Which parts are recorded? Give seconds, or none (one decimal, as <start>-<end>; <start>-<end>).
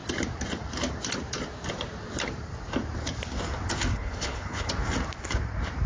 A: 0.0-3.9; 4.7-5.9